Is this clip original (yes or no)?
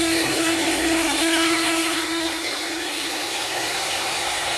no